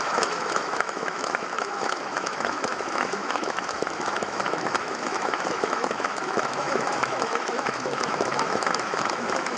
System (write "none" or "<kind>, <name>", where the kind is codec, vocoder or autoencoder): autoencoder, DAC-VAE